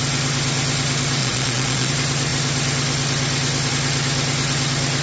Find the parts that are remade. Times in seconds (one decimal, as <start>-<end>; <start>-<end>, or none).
1.2-1.9